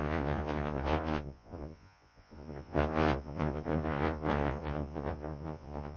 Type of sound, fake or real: fake